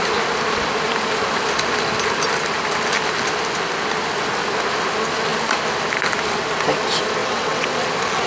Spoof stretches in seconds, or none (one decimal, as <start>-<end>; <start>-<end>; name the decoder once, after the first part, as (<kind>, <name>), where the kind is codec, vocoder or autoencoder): 7.2-7.7 (vocoder, WaveNeXt)